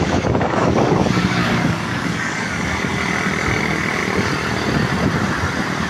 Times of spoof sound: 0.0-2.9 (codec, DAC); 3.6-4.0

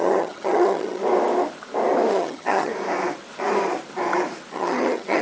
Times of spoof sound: 0.0-1.0 (vocoder, HiFi-GAN); 2.1-2.7; 4.5-5.2

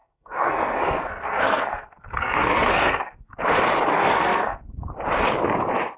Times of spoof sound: 0.0-3.3 (codec, SNAC); 3.9-4.6